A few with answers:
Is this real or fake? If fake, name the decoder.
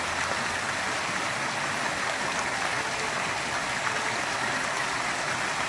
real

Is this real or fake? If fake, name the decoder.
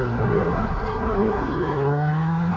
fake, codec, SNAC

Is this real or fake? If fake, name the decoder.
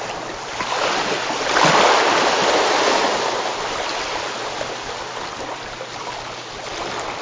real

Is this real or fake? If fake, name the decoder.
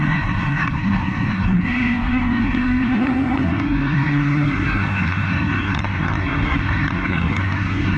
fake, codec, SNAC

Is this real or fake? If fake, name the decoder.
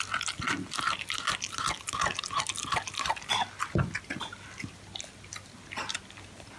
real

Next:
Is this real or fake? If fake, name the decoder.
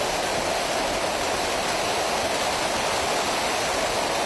real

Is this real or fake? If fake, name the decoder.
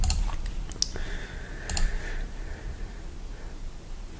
real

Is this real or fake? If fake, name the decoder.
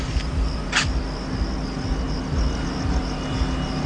real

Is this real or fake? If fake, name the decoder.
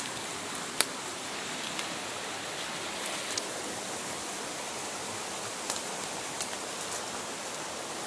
real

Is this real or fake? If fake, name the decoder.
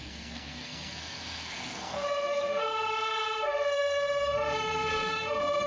fake, codec, SNAC